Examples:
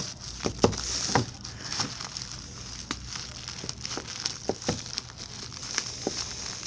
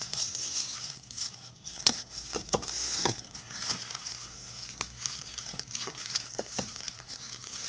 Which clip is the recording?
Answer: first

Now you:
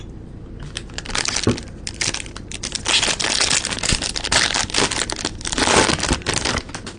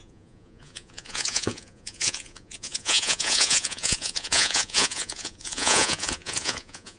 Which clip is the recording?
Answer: first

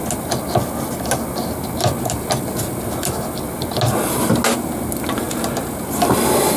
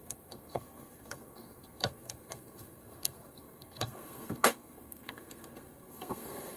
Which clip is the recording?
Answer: first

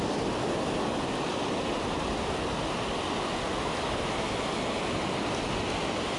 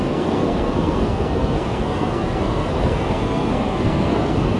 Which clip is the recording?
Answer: first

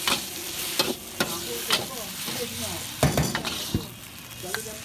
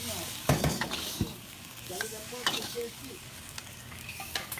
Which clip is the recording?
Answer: first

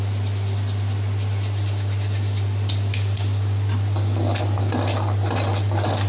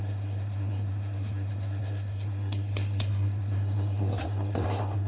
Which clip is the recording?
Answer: first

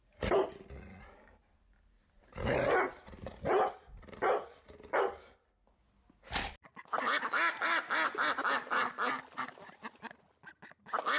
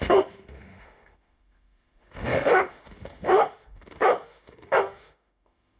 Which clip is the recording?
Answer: first